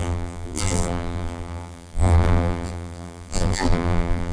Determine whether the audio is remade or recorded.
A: remade